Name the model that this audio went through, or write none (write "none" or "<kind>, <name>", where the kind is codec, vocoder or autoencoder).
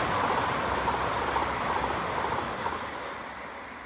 none